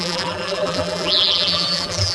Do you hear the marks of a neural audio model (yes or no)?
yes